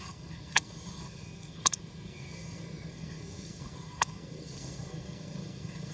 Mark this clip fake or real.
fake